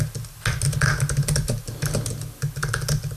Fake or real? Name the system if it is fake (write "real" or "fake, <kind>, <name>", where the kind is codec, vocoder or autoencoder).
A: real